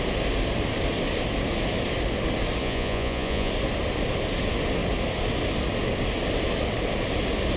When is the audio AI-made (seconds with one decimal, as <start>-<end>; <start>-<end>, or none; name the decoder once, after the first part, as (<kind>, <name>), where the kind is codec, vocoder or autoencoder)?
2.6-3.5 (vocoder, Vocos)